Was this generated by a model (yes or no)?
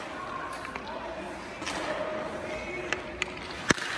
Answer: no